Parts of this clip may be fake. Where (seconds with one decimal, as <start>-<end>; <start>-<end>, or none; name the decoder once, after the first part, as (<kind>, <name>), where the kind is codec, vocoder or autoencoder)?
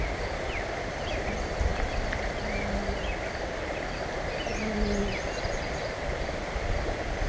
none